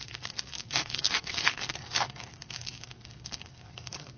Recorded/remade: remade